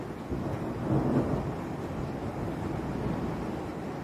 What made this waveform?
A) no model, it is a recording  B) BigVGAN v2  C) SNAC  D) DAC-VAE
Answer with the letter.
A